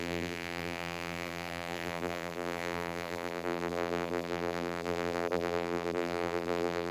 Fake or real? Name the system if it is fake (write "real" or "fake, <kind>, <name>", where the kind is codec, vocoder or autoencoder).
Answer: fake, vocoder, BigVGAN v2